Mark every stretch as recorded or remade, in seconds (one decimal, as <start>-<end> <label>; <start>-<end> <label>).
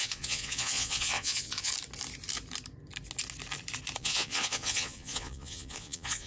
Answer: 0.0-1.7 remade; 1.7-4.0 recorded; 4.0-6.3 remade